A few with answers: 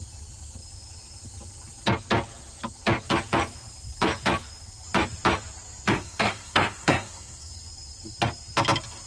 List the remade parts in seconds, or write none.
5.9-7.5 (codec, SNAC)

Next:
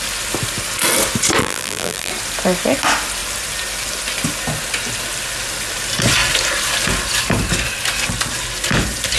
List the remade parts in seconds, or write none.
1.4-2.1 (vocoder, BigVGAN v2)

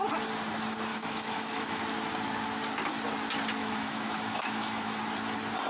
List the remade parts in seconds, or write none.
0.9-1.8 (autoencoder, DAC-VAE); 3.6-5.0

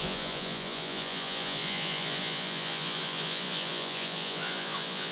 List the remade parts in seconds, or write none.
0.0-5.1 (vocoder, Vocos)

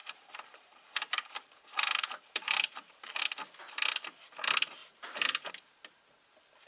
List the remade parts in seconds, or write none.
0.0-3.2 (vocoder, BigVGAN v2); 4.8-5.5

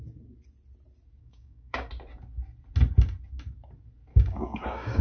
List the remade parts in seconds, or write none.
1.2-1.9 (codec, DAC); 4.1-5.0